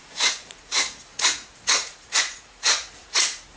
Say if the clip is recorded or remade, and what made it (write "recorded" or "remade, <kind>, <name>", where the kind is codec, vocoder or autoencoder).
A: remade, vocoder, Vocos